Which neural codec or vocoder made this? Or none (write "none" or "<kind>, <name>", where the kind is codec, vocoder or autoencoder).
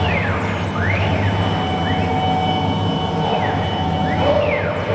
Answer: none